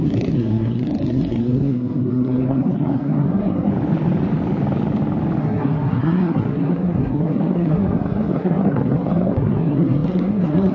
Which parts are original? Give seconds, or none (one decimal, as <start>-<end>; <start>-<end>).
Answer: 3.7-5.4